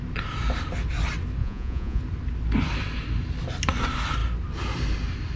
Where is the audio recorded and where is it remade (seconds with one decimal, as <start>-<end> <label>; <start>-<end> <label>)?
0.0-1.4 recorded; 1.4-2.0 remade; 2.0-5.4 recorded